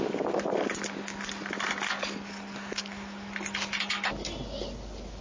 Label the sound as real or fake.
real